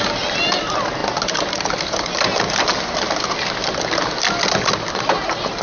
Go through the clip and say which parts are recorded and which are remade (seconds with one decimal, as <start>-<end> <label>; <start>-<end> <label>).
0.0-5.6 recorded